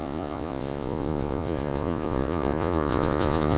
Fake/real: fake